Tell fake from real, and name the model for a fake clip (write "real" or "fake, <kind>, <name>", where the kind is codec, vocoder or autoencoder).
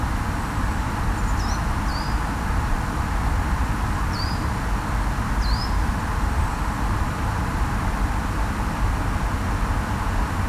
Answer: real